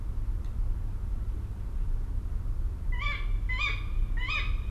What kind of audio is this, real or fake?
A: real